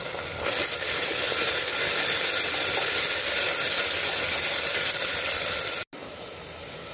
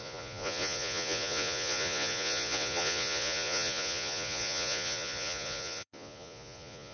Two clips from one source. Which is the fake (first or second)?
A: second